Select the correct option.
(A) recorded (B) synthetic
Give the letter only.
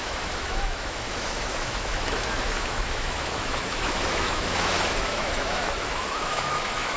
B